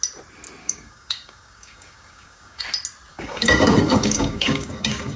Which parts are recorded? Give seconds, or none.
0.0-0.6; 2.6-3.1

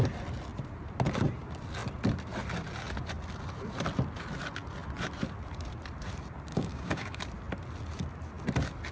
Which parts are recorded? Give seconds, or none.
0.0-6.5; 7.2-8.9